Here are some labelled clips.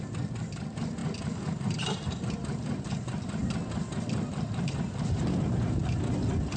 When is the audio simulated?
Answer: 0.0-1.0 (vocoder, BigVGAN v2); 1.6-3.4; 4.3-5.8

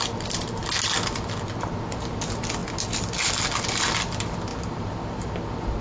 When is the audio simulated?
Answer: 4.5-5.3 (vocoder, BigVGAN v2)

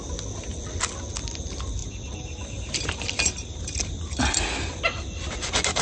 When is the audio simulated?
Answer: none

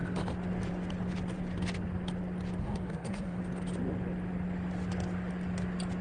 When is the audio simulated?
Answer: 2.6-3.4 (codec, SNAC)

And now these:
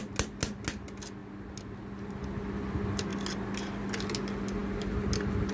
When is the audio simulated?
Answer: none

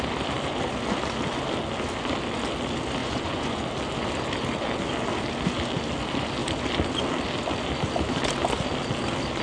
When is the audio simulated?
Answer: 3.0-3.6 (vocoder, Vocos)